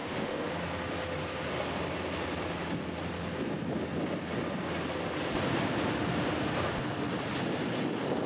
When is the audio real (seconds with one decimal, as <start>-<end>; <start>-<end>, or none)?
0.5-8.3